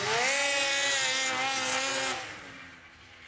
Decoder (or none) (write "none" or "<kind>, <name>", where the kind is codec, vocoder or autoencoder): none